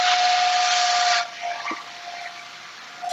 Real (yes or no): yes